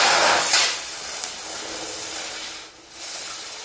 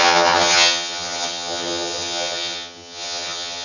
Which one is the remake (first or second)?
second